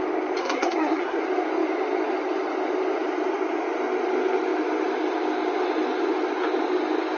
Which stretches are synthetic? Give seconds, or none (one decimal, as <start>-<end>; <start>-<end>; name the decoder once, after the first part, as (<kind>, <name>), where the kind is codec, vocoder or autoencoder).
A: 0.4-1.2 (codec, SNAC)